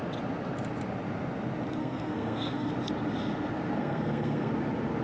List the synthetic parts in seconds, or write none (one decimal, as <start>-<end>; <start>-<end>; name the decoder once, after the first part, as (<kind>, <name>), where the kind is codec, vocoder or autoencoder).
1.8-2.7 (codec, SNAC); 3.8-4.5